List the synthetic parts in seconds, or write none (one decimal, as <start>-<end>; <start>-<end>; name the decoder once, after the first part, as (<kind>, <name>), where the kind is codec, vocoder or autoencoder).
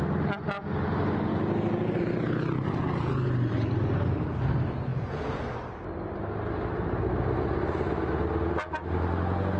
4.9-5.4 (vocoder, Vocos)